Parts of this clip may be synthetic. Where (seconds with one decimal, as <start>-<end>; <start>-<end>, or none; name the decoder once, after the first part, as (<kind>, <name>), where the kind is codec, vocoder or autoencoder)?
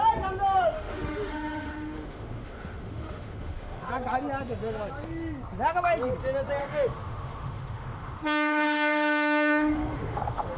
0.6-3.9 (autoencoder, DAC-VAE); 6.6-10.6